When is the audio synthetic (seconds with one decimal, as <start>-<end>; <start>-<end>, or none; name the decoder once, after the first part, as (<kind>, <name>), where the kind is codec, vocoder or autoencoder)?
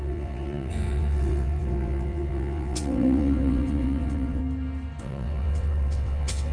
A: 0.0-4.4 (vocoder, WaveNeXt); 5.0-6.5